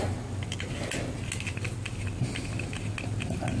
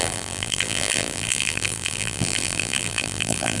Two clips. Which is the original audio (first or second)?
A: first